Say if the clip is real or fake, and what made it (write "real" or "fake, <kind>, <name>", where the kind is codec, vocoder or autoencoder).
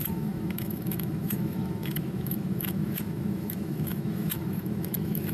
fake, autoencoder, DAC-VAE